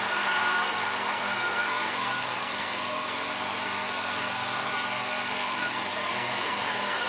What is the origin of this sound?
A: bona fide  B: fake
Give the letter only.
B